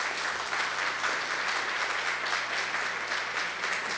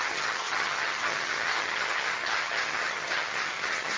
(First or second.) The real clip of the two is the first